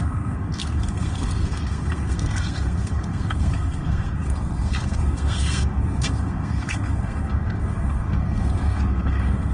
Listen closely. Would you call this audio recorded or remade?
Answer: remade